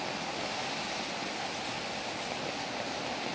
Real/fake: real